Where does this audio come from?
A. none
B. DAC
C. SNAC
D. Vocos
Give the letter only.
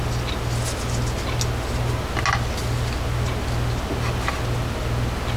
A